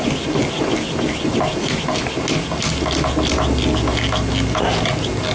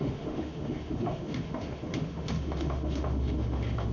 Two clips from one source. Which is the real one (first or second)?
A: first